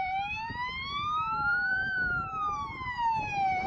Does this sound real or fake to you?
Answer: fake